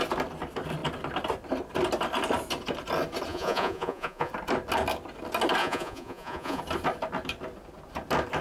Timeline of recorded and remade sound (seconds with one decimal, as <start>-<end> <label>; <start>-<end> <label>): 0.0-3.3 recorded; 3.3-4.3 remade; 4.3-5.6 recorded; 5.6-6.6 remade; 6.6-8.4 recorded